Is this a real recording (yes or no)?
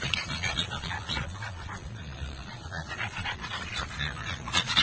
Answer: no